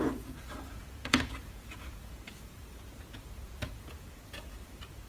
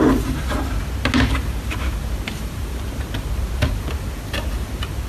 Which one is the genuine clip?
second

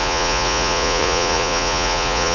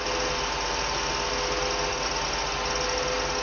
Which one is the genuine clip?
second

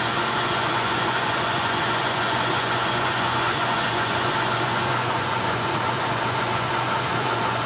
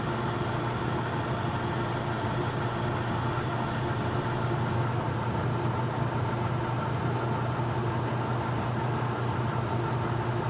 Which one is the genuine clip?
second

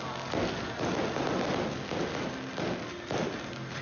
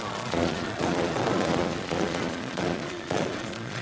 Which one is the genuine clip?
first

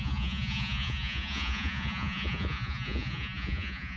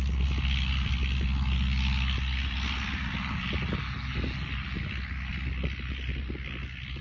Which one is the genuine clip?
second